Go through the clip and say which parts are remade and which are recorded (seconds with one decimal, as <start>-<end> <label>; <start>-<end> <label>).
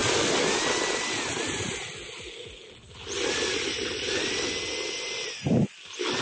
0.0-6.2 recorded